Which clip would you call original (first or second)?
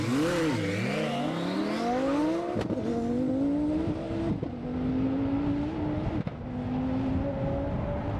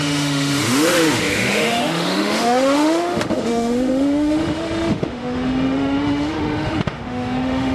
first